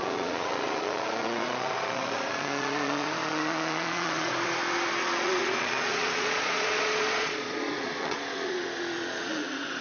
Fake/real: fake